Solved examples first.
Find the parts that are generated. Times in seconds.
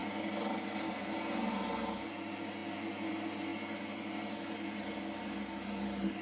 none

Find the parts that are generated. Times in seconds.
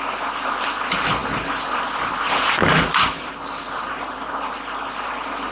none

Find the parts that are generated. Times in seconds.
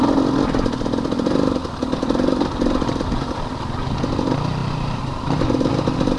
4.6-5.7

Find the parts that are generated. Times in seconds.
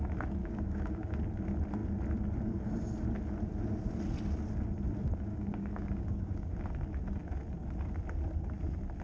0.4-1.2; 5.3-6.5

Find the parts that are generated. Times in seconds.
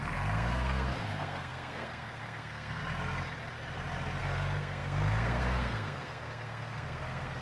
0.0-2.8; 4.2-7.4